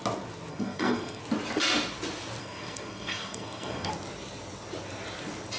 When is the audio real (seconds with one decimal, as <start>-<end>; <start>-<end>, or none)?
0.0-0.5; 1.2-2.4; 3.9-5.6